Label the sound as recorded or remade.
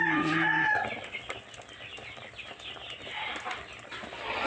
recorded